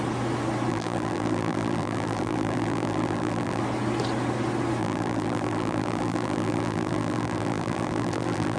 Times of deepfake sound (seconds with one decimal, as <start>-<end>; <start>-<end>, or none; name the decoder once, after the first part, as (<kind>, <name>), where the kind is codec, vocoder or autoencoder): 0.7-3.6 (vocoder, BigVGAN v2); 4.8-8.6